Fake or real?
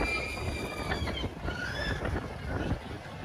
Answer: real